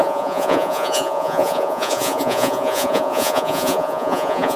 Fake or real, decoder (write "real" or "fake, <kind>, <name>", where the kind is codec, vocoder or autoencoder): fake, vocoder, Vocos